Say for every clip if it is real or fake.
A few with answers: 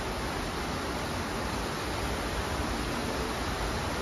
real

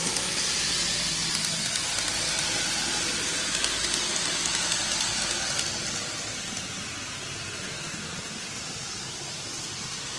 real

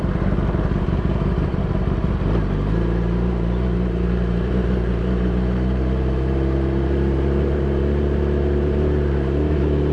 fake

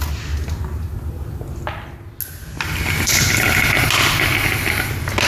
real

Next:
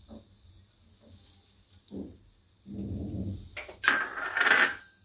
real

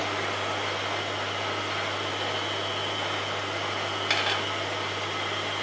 real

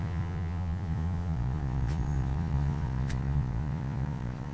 fake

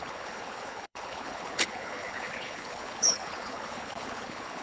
fake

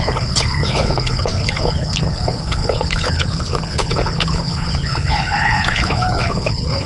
fake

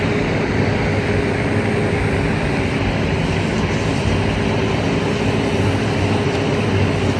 real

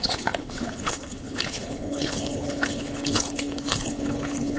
fake